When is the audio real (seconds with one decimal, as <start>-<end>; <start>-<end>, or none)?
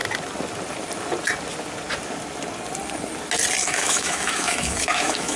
0.0-3.6